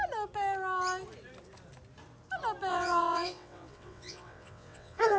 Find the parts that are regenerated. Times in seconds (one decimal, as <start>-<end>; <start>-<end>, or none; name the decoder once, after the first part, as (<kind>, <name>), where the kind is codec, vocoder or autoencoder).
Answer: 2.7-5.2 (vocoder, WaveNeXt)

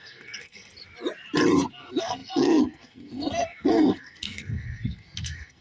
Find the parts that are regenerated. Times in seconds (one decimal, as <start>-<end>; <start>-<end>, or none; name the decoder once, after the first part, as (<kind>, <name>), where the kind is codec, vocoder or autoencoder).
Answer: 0.0-0.7 (codec, SNAC); 1.7-5.6